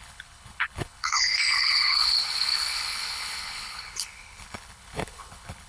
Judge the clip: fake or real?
fake